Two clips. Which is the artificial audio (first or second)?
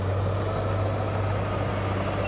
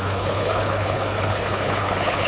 second